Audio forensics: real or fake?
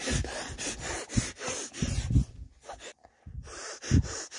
real